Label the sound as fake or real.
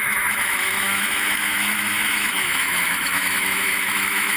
fake